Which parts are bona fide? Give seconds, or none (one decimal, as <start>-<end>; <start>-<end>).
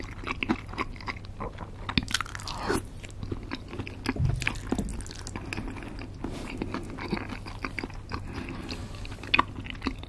0.0-10.1